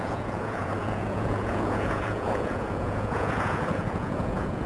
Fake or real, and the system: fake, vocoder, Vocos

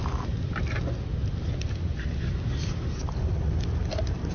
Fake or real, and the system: real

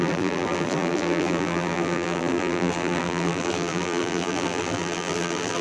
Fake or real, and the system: fake, vocoder, BigVGAN v2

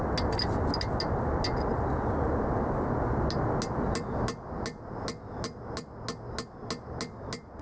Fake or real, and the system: real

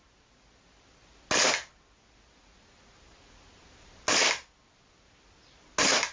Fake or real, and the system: real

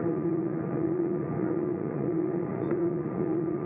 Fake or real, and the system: fake, vocoder, Vocos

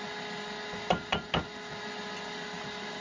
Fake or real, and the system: real